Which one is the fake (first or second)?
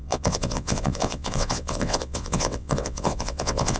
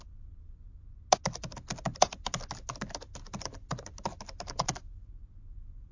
first